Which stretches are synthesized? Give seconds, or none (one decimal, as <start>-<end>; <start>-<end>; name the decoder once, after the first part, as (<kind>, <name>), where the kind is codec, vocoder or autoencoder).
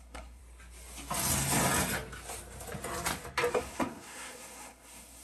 0.0-0.4 (codec, SNAC); 3.5-5.2